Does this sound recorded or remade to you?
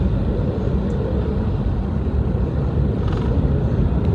recorded